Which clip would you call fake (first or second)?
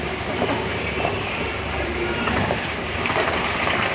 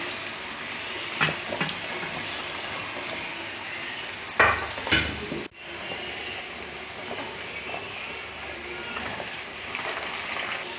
first